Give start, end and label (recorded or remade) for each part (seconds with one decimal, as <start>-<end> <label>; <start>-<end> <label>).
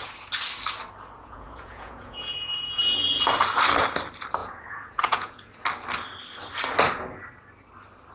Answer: 0.0-1.2 recorded; 1.2-2.8 remade; 2.8-4.4 recorded; 4.4-5.5 remade; 5.5-8.1 recorded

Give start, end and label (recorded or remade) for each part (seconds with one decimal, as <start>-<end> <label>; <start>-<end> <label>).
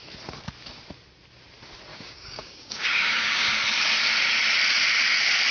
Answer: 0.0-1.9 recorded; 1.9-3.5 remade; 3.5-5.5 recorded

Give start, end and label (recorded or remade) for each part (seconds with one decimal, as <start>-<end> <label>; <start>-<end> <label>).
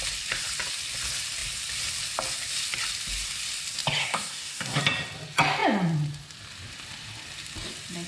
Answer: 0.0-4.0 recorded; 4.0-4.8 remade; 4.8-8.1 recorded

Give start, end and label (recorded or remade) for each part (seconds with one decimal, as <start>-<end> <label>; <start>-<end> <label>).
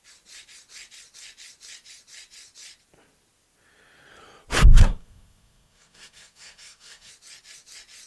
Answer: 0.0-4.6 recorded; 4.6-7.1 remade; 7.1-8.1 recorded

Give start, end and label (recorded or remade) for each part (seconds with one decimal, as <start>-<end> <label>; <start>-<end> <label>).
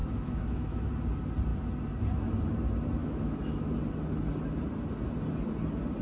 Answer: 0.0-0.9 remade; 0.9-3.0 recorded; 3.0-3.7 remade; 3.7-6.0 recorded